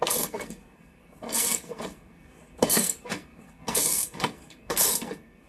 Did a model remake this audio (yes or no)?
yes